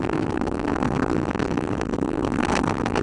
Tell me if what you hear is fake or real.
fake